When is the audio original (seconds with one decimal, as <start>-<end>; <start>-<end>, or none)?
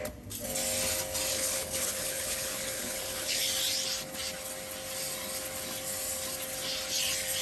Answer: 0.0-1.3; 3.4-7.4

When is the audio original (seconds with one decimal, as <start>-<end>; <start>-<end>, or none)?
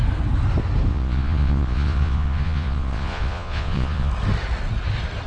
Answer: 0.0-0.9; 4.1-5.3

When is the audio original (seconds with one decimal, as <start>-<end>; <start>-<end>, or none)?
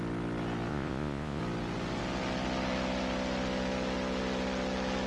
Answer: 0.0-0.7; 1.4-5.1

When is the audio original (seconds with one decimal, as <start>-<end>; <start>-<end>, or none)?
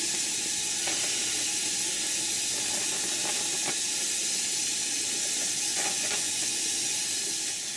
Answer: 0.0-5.7; 6.5-7.8